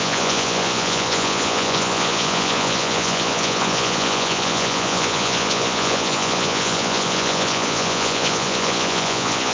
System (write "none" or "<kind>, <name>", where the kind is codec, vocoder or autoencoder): vocoder, Vocos